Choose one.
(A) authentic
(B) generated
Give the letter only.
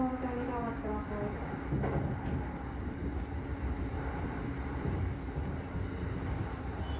A